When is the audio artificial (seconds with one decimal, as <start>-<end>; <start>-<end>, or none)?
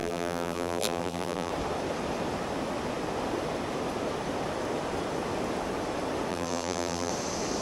0.0-1.5; 6.3-7.1